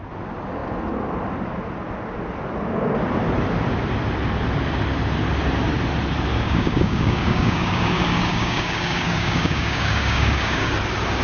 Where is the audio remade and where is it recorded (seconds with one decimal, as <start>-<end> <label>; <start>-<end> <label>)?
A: 0.0-6.3 recorded; 6.3-10.7 remade; 10.7-11.2 recorded